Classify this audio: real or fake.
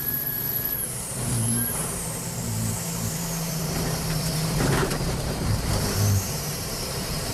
fake